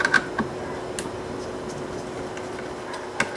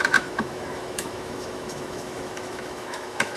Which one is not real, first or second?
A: second